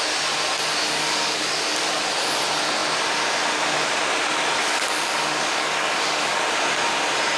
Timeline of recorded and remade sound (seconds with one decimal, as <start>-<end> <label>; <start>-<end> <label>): 0.0-0.8 recorded; 0.8-2.0 remade; 2.0-4.6 recorded; 4.6-6.4 remade; 6.4-7.4 recorded